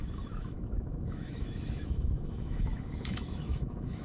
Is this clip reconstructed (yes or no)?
yes